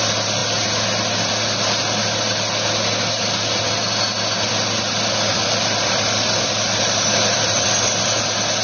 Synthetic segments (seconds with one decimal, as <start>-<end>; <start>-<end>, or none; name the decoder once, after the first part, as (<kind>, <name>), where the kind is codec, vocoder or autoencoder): 5.3-8.2 (vocoder, BigVGAN v2)

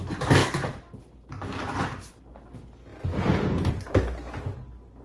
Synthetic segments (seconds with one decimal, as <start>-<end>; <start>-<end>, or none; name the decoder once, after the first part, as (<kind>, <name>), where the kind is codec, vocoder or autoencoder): none